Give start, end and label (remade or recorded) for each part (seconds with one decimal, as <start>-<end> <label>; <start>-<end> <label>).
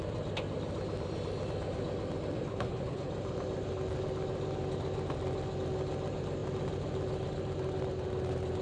0.0-2.5 recorded; 2.5-3.1 remade; 3.1-8.6 recorded